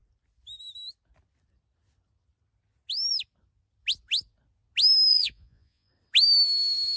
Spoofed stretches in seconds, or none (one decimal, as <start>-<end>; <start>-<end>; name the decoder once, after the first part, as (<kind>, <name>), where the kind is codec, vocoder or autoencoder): 5.1-5.9 (vocoder, Vocos)